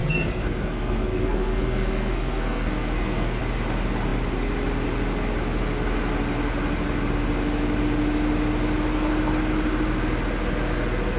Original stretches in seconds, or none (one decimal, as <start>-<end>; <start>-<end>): 3.4-11.2